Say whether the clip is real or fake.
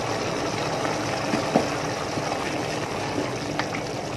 real